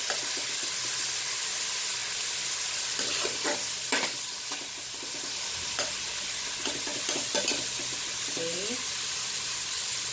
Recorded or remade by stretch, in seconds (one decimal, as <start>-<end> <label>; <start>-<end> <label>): 0.0-10.1 recorded